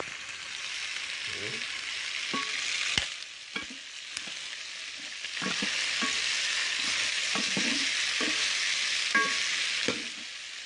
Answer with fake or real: real